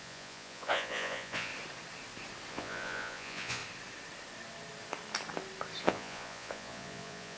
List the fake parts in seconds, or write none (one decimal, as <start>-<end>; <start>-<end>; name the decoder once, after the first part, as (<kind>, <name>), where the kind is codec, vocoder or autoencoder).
0.0-1.5 (vocoder, Vocos); 2.5-3.6; 5.8-7.4